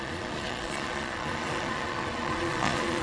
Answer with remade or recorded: remade